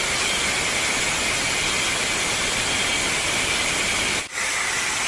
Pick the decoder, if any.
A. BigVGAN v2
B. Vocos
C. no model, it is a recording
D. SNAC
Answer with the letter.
C